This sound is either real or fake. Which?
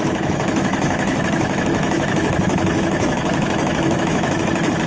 fake